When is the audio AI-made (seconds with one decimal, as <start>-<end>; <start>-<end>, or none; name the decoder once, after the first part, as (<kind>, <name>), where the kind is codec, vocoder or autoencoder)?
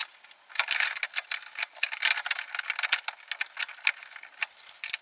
none